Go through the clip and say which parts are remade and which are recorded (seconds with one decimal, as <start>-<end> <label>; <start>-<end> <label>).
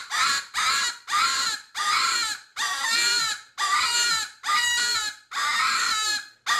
0.0-2.5 recorded; 2.5-3.8 remade; 3.8-6.6 recorded